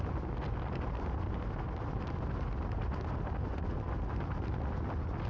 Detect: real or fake real